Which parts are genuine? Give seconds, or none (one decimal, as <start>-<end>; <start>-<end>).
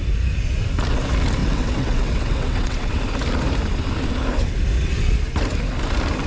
0.0-1.4; 3.0-6.3